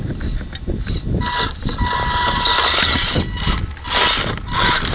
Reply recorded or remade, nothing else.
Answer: recorded